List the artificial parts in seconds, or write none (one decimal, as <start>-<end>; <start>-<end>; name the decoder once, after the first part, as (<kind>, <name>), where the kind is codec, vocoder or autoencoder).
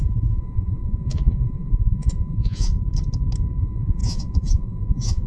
0.0-2.7 (vocoder, Vocos); 3.6-5.3